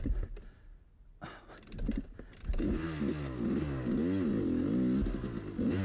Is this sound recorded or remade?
recorded